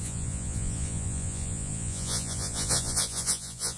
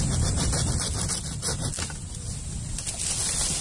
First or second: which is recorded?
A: second